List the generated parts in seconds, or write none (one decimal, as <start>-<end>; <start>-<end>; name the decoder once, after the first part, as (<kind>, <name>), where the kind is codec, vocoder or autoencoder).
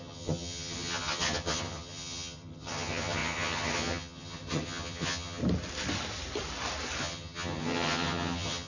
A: 0.0-5.4 (vocoder, HiFi-GAN); 7.0-8.7